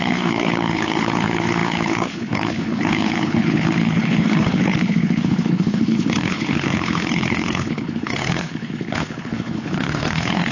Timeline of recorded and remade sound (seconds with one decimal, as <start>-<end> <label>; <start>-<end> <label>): 0.0-10.5 remade